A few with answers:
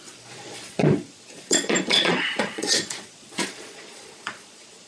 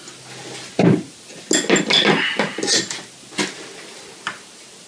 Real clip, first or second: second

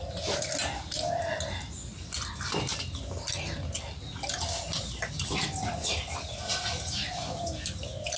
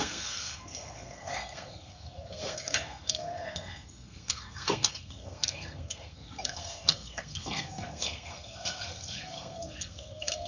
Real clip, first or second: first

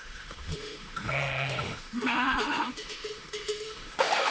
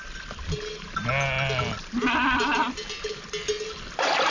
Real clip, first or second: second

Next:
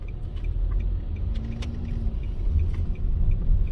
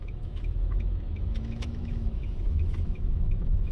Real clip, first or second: first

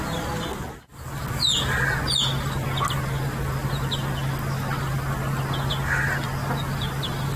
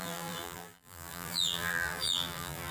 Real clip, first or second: first